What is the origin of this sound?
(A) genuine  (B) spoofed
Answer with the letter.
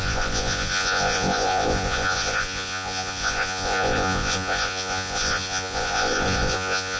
B